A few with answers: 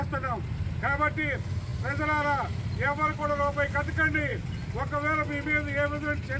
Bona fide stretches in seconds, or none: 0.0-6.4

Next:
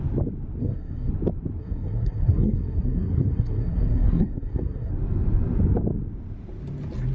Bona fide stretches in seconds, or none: 0.0-0.6; 1.1-1.6; 4.9-7.1

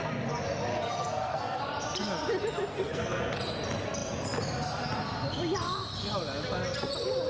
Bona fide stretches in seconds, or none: 0.0-0.7; 1.6-2.7; 3.4-7.3

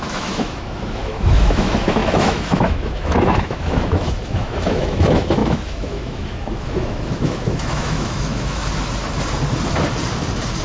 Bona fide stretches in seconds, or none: 8.6-10.6

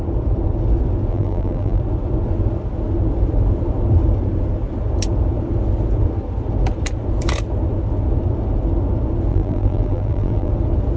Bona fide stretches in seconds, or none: 0.0-1.1; 1.8-9.3; 10.5-11.0

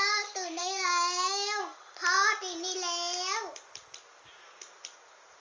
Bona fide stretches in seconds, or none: 0.0-0.6; 1.6-5.4

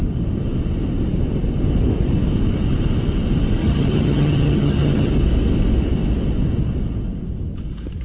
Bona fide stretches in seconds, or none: 0.0-3.6; 5.1-8.0

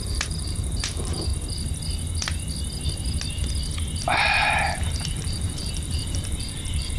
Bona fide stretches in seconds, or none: 1.3-4.0